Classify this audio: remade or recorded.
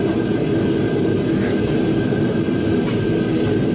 recorded